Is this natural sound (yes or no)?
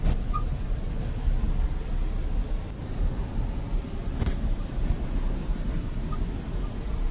yes